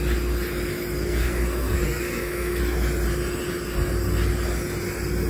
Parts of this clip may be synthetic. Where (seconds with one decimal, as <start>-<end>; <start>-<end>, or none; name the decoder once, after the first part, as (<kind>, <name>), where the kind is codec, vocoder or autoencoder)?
1.0-2.6 (codec, SNAC)